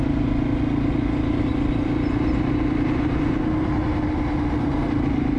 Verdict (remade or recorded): recorded